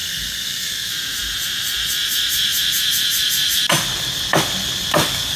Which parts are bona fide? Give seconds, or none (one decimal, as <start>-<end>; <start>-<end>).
0.9-5.4